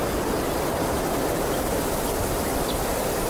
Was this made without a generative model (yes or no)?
yes